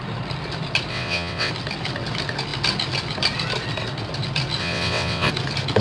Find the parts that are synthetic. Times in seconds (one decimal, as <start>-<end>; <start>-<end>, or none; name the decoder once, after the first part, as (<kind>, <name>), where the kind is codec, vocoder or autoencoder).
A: 0.9-1.5 (vocoder, WaveNeXt); 4.6-5.3